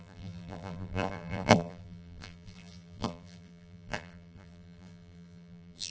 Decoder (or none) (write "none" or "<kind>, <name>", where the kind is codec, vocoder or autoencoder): vocoder, BigVGAN v2